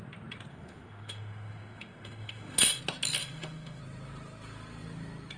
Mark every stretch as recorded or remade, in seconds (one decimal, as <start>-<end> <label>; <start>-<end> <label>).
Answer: 0.0-0.5 recorded; 0.5-2.8 remade; 2.8-3.2 recorded; 3.2-3.8 remade; 3.8-5.4 recorded

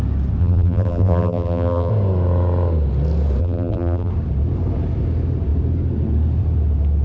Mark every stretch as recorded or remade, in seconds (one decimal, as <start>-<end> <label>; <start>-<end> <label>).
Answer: 0.0-0.4 recorded; 0.4-1.9 remade; 1.9-3.4 recorded; 3.4-4.1 remade; 4.1-7.0 recorded

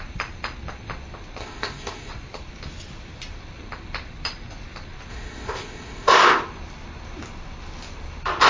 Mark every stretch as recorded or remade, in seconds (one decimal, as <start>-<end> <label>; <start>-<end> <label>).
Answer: 0.0-1.4 recorded; 1.4-2.1 remade; 2.1-5.1 recorded; 5.1-6.4 remade; 6.4-8.5 recorded

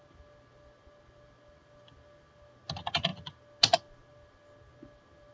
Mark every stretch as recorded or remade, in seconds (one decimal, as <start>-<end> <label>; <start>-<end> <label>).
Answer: 0.0-5.3 recorded

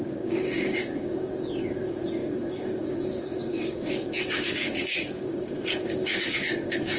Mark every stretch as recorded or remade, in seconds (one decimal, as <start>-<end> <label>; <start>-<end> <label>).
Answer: 0.0-7.0 remade